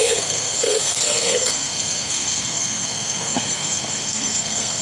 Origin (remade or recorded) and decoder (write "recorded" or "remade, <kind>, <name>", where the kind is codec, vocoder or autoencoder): remade, codec, SNAC